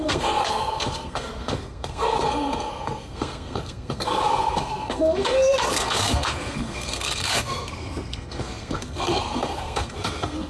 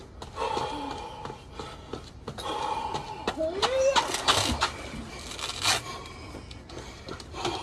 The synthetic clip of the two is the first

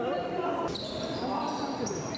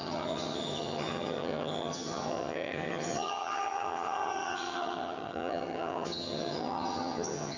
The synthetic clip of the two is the second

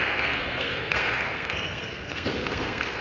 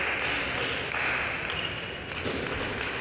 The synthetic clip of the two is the first